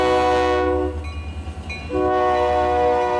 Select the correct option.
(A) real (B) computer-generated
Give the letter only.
A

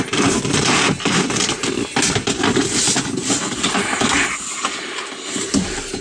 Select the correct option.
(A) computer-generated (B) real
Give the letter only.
B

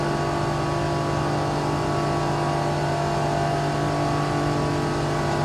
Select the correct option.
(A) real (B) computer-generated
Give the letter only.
A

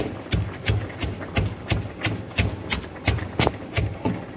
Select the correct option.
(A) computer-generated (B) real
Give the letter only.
A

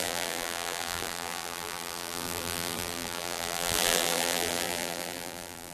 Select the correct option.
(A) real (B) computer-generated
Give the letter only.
B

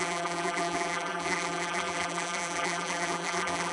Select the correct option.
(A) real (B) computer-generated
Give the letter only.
B